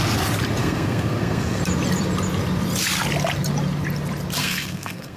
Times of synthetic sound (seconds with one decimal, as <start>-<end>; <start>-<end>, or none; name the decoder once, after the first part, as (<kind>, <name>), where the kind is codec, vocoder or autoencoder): 0.6-1.6 (codec, SNAC); 4.4-5.2